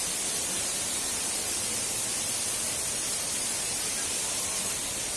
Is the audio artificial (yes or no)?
yes